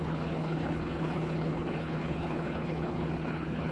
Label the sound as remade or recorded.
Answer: remade